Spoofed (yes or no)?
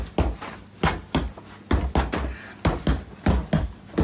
no